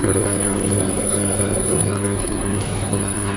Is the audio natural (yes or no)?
no